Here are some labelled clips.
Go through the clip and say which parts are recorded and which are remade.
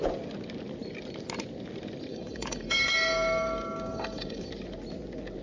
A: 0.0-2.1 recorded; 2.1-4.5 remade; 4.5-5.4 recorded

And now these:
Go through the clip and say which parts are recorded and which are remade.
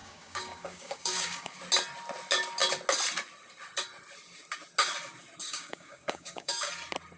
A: 0.0-1.6 remade; 1.6-5.4 recorded; 5.4-6.7 remade; 6.7-7.2 recorded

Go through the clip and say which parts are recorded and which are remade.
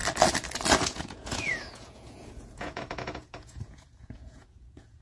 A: 0.0-0.8 recorded; 0.8-5.0 remade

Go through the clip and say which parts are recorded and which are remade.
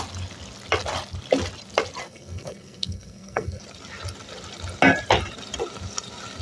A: 0.0-2.0 recorded; 2.0-3.6 remade; 3.6-6.4 recorded